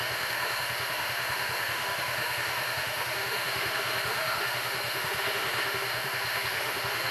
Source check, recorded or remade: remade